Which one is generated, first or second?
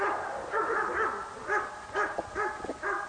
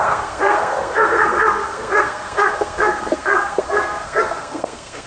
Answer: second